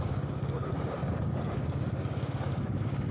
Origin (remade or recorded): remade